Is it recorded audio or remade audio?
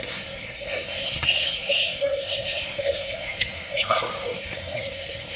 remade